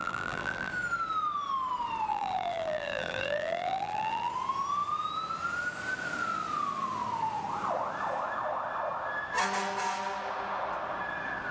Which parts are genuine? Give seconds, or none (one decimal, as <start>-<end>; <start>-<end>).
0.7-2.1; 4.3-11.5